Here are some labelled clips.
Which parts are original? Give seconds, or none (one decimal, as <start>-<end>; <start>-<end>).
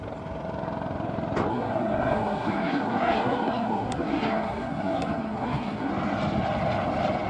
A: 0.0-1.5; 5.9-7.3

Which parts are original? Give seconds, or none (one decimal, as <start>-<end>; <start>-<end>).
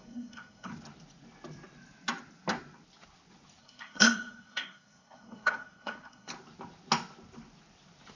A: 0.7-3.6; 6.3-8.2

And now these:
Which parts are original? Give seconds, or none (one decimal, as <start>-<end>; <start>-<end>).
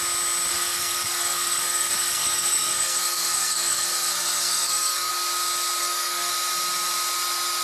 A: 0.0-0.5; 5.1-5.8; 6.3-7.6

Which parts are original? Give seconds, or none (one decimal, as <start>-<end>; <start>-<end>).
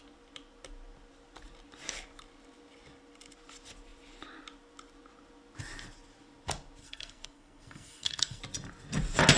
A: 0.0-6.8; 8.4-9.4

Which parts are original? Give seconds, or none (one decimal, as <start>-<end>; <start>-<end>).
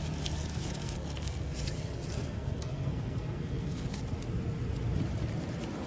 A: 0.0-0.5; 4.0-5.9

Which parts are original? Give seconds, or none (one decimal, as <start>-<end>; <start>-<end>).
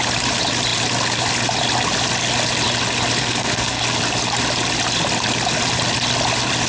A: 0.0-3.2; 3.8-6.7